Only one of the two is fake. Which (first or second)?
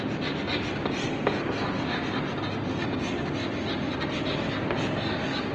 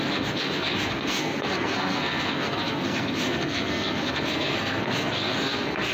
second